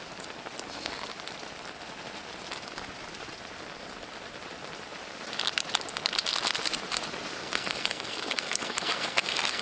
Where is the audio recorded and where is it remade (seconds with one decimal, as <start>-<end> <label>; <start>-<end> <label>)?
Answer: 0.0-7.4 recorded; 7.4-9.6 remade